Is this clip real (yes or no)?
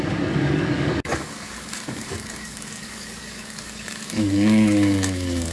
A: no